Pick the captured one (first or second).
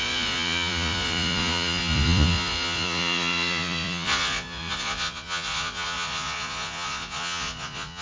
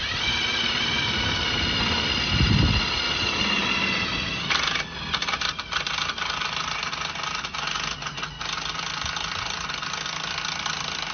second